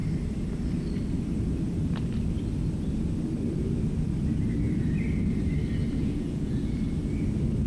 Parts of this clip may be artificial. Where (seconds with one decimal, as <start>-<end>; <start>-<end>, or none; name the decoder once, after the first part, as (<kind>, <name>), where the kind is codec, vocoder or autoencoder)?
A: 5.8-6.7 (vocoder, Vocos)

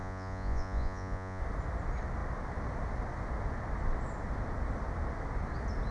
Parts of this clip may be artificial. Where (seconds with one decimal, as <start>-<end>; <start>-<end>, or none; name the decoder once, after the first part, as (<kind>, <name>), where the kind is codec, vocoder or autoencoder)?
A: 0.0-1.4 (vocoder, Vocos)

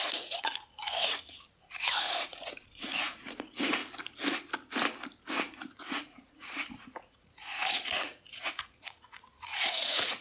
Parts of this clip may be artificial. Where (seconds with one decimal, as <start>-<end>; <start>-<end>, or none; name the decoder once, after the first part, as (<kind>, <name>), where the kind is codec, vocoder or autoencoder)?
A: 0.0-3.8 (vocoder, Vocos); 5.3-10.2

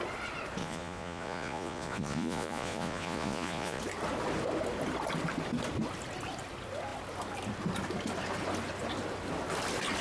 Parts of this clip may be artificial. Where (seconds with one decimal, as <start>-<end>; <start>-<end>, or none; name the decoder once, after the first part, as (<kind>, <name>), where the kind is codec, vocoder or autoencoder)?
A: 0.6-3.8 (vocoder, Vocos)

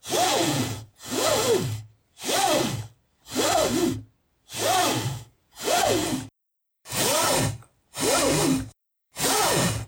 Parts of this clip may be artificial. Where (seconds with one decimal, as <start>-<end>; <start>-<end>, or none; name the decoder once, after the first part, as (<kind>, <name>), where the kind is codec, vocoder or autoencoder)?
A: 0.0-1.4 (vocoder, Vocos); 5.1-6.0; 6.6-7.1; 8.7-9.9

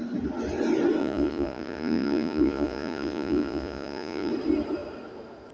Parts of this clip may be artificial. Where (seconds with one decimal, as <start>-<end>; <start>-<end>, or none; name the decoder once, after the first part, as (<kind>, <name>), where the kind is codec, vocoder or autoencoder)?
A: 1.0-4.3 (vocoder, Vocos)

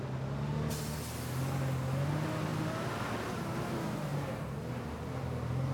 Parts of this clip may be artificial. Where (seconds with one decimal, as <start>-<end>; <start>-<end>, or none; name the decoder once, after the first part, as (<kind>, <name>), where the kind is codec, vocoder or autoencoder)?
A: none

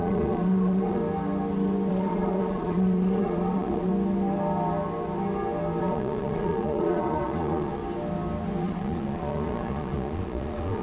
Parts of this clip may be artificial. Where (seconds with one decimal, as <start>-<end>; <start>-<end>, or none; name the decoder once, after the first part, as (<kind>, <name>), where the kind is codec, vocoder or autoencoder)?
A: 0.0-1.0 (vocoder, Vocos); 1.9-3.9; 5.8-7.8; 8.6-10.8